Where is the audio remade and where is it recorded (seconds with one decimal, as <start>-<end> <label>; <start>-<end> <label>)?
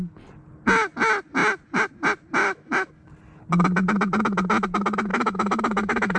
0.0-2.4 recorded; 2.4-2.9 remade; 2.9-5.1 recorded; 5.1-6.2 remade